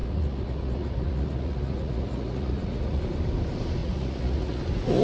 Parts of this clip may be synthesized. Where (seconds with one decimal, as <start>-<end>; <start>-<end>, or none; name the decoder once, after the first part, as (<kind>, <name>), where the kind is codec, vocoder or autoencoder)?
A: 0.0-3.0 (vocoder, Vocos); 3.8-4.6